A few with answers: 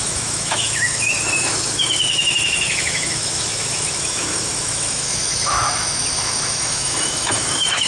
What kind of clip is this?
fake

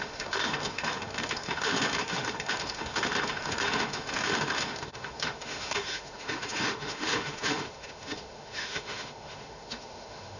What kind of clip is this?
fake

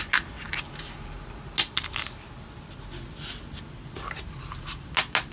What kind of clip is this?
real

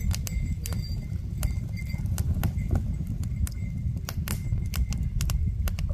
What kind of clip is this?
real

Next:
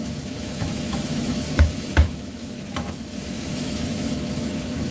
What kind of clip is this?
fake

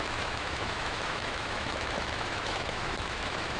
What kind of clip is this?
fake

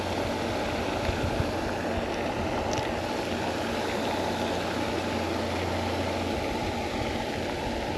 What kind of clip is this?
real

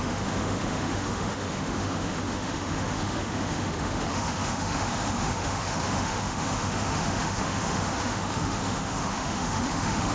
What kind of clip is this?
fake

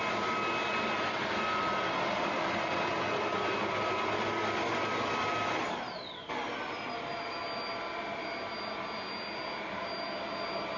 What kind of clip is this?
real